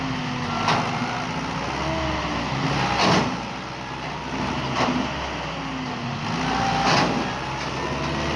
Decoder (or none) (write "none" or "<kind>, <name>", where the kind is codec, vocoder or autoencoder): none